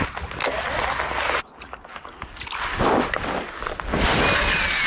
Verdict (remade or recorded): recorded